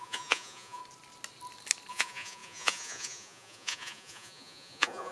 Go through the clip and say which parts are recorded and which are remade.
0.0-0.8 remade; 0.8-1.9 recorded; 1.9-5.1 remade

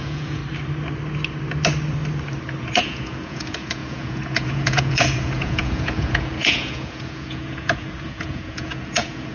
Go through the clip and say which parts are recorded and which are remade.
0.0-0.4 remade; 0.4-2.8 recorded; 2.8-9.3 remade

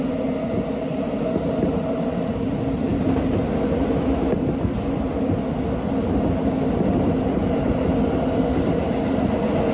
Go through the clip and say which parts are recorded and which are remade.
0.0-9.7 recorded

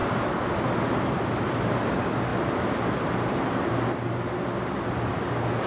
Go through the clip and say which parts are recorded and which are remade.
0.0-5.7 recorded

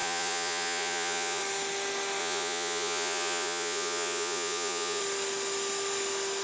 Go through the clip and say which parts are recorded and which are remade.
0.0-1.4 remade; 1.4-2.2 recorded; 2.2-5.0 remade; 5.0-6.4 recorded

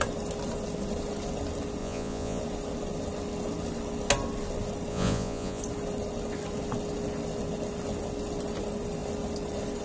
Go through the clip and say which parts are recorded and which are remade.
0.0-1.8 recorded; 1.8-2.4 remade; 2.4-4.9 recorded; 4.9-5.6 remade; 5.6-9.8 recorded